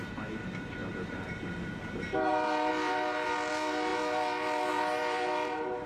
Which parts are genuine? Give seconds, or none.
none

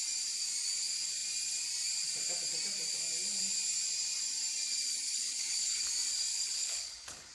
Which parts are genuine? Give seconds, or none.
0.0-4.9; 5.8-6.3

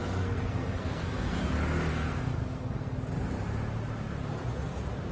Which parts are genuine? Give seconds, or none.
1.4-1.9; 3.0-5.1

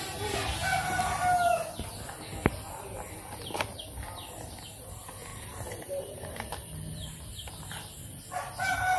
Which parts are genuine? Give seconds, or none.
0.0-5.3; 7.5-9.0

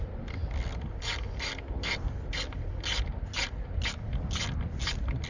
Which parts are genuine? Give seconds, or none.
0.0-5.3

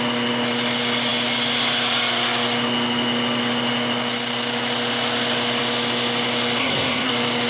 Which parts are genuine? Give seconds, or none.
0.0-6.6; 7.1-7.5